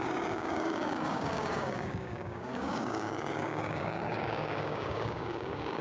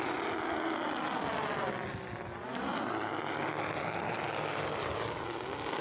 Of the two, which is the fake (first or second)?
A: first